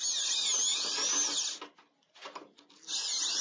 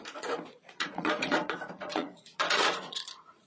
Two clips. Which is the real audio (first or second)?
first